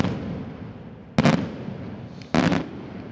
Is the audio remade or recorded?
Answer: recorded